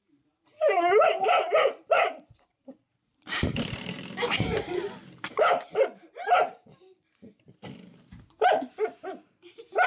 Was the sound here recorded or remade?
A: remade